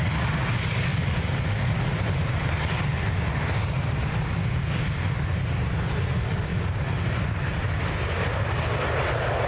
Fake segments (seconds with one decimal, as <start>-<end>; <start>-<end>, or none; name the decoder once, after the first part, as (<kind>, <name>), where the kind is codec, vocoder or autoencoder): 0.9-3.3 (vocoder, BigVGAN v2); 6.5-7.6